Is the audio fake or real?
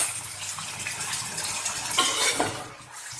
real